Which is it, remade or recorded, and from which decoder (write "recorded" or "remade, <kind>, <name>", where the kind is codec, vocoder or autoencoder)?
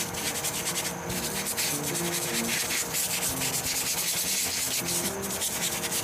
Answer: recorded